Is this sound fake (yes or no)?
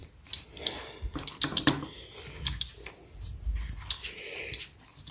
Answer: no